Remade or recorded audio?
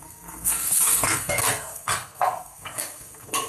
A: remade